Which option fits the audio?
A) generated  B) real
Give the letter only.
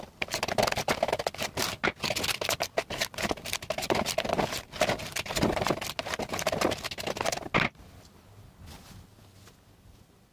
B